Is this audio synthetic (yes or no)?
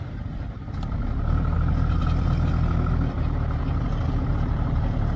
no